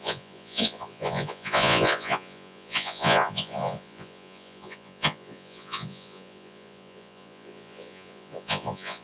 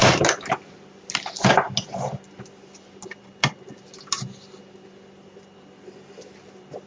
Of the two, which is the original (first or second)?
second